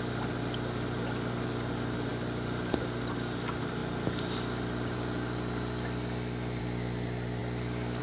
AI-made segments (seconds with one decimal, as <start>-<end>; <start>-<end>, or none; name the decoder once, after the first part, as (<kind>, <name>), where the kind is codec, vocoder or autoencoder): none